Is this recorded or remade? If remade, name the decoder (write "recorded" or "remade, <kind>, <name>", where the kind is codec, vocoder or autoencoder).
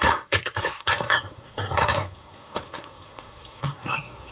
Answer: remade, codec, SNAC